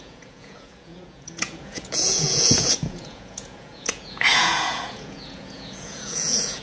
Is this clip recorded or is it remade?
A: remade